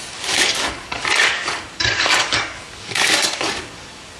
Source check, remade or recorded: remade